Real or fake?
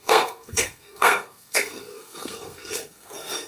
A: fake